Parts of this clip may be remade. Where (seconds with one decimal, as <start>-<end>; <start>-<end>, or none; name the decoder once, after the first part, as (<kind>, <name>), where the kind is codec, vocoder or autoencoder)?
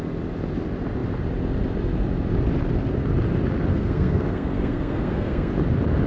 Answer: 3.7-5.5 (codec, SNAC)